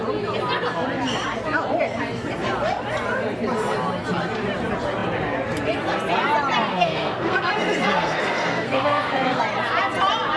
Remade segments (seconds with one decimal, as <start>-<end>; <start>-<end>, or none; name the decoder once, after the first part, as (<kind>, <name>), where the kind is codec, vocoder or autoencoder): 6.7-9.4 (codec, SNAC)